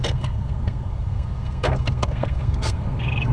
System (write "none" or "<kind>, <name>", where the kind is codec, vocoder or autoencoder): codec, SNAC